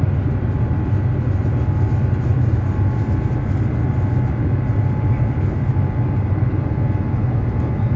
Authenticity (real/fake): real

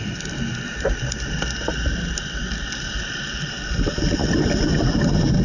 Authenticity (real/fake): real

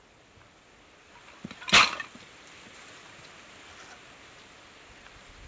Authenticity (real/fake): real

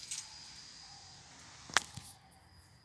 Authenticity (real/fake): real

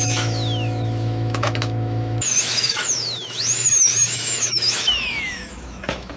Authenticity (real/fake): fake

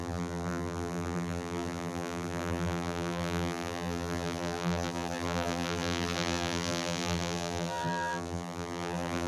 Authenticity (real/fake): fake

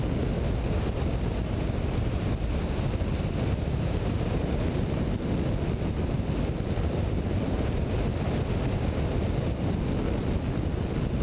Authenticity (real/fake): real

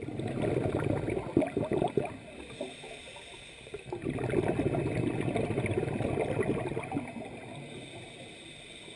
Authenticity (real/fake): real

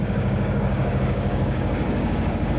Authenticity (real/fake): fake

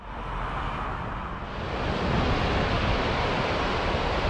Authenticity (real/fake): fake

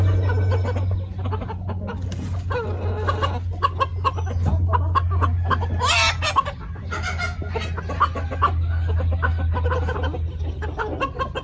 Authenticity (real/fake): real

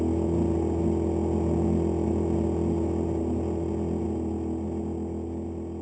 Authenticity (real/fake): real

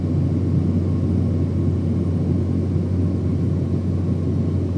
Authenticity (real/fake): real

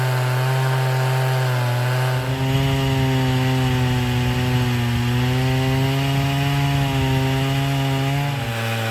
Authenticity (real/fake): real